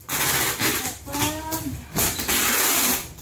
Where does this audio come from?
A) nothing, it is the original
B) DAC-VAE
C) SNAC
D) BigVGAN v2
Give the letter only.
A